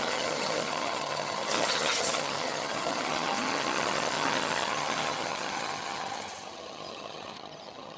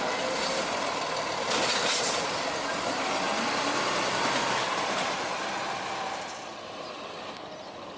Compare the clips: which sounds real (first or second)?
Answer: second